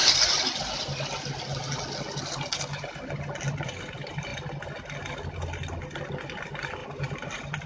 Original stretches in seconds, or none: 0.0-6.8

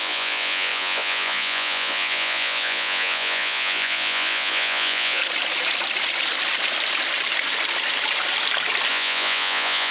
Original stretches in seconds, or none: 5.2-8.9

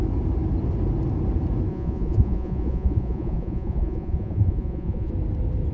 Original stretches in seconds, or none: 0.0-1.7; 5.1-5.7

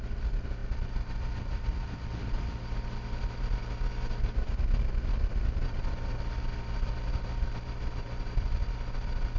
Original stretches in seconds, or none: 0.0-9.4

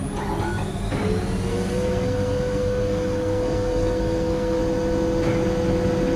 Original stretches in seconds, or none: 0.0-1.5; 4.6-6.2

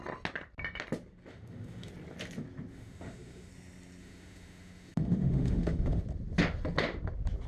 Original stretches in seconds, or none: 0.0-1.3; 1.9-2.7; 3.5-4.0; 6.0-7.5

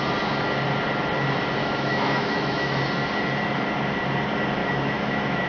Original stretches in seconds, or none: 0.0-1.6; 2.8-4.6

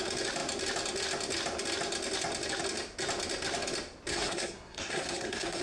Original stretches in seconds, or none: 0.0-4.1